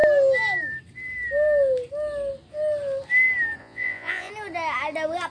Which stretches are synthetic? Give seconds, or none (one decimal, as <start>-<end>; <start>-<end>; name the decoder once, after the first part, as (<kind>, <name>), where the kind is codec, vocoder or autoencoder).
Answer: 3.6-4.3 (vocoder, Vocos)